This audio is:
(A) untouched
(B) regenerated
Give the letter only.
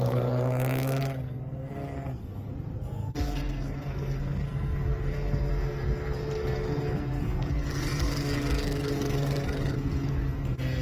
B